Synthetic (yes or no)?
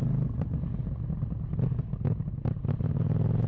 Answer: no